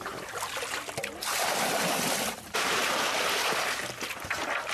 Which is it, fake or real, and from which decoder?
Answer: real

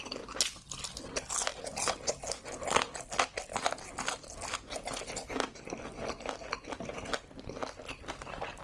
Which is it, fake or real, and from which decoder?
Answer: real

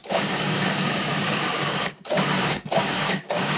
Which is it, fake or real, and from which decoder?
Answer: fake, codec, DAC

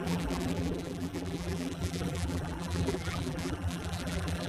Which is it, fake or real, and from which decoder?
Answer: fake, vocoder, BigVGAN v2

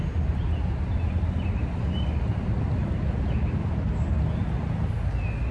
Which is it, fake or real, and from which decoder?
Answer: real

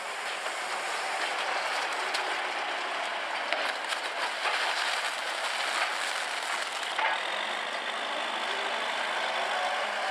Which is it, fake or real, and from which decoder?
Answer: real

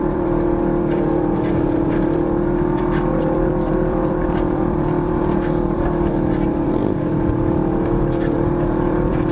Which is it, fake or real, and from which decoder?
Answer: fake, vocoder, BigVGAN v2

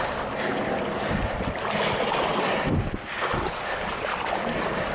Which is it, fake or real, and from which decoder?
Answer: real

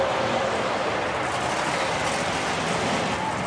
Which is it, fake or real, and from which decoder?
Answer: real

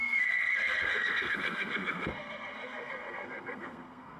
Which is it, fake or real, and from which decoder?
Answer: fake, codec, SNAC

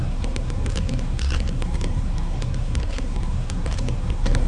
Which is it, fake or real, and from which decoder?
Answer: fake, codec, SNAC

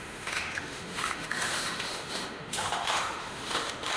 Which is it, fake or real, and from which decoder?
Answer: fake, autoencoder, DAC-VAE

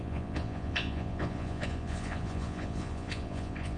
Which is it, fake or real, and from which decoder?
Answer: fake, vocoder, Vocos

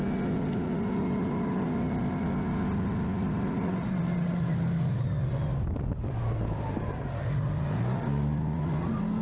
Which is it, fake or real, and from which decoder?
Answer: real